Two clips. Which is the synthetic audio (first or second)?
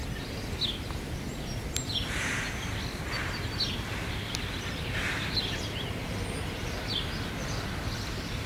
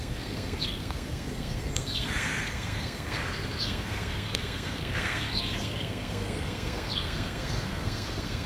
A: second